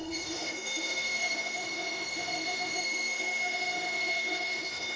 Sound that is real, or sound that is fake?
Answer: fake